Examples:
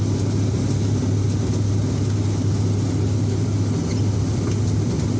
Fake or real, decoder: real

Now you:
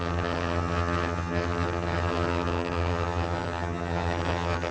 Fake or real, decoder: fake, vocoder, HiFi-GAN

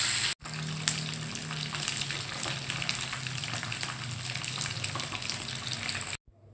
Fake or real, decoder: real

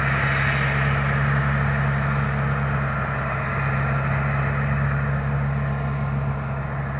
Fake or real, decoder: real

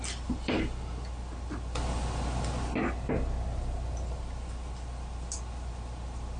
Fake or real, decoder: real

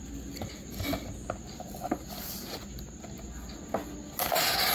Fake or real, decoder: real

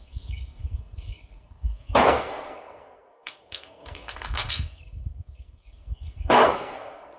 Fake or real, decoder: fake, codec, SNAC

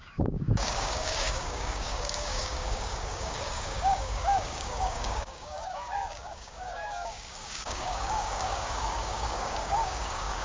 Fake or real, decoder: fake, codec, DAC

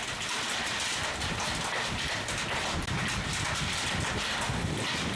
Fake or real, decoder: real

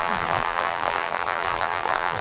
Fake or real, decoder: fake, vocoder, BigVGAN v2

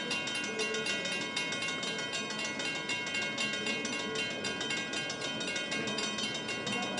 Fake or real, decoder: real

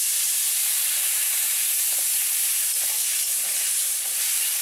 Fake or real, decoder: fake, vocoder, BigVGAN v2